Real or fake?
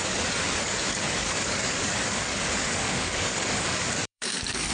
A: fake